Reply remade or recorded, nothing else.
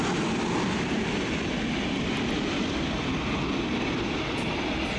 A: recorded